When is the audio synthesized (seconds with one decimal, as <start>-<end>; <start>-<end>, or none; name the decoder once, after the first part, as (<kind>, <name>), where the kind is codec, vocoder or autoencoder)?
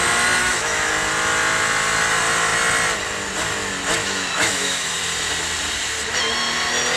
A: 0.4-0.9 (autoencoder, DAC-VAE); 4.0-4.9